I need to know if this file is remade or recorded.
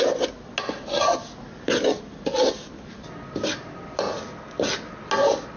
recorded